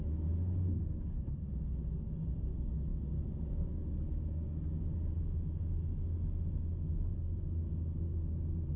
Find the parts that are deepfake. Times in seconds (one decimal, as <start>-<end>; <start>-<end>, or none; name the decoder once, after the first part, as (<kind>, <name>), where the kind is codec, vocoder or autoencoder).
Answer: none